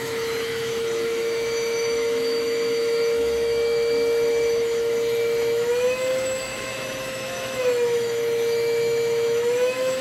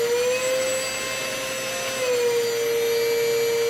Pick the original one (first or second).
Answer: second